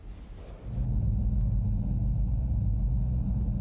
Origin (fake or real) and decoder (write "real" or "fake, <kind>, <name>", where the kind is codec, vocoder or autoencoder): real